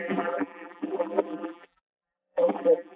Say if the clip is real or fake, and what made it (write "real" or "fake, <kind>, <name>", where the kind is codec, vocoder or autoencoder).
fake, vocoder, BigVGAN v2